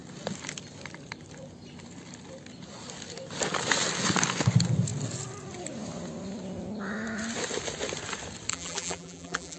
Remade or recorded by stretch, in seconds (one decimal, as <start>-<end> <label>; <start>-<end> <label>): 0.0-8.5 recorded; 8.5-9.6 remade

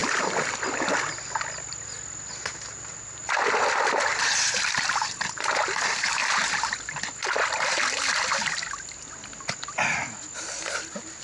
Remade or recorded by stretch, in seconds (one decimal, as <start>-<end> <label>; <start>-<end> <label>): 0.0-2.4 recorded; 2.4-3.4 remade; 3.4-5.6 recorded; 5.6-6.2 remade; 6.2-11.2 recorded

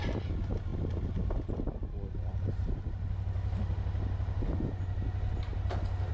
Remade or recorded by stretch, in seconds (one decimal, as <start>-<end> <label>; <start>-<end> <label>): 0.0-6.1 recorded

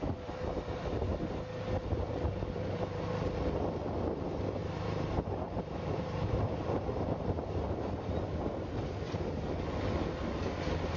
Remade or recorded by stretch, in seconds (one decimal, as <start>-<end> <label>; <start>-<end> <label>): 0.0-1.1 recorded; 1.1-3.1 remade; 3.1-4.6 recorded; 4.6-7.3 remade; 7.3-11.0 recorded

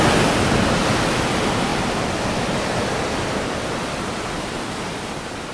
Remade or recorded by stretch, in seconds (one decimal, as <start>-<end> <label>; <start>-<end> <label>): 0.0-1.7 recorded; 1.7-5.0 remade; 5.0-5.5 recorded

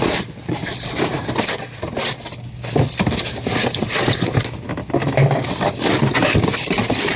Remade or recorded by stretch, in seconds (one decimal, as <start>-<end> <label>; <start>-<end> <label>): 0.0-0.6 recorded; 0.6-1.3 remade; 1.3-7.2 recorded

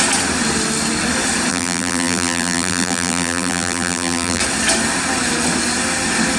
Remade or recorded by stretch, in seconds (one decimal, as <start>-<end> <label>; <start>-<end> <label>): 0.0-1.5 recorded; 1.5-4.4 remade; 4.4-6.4 recorded

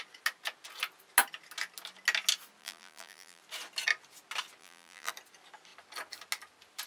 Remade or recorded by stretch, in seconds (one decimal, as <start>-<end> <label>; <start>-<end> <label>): 0.0-2.6 recorded; 2.6-3.4 remade; 3.4-4.6 recorded; 4.6-5.1 remade; 5.1-6.9 recorded